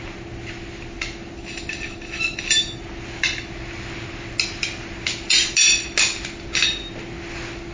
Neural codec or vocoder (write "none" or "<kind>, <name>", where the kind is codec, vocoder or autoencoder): none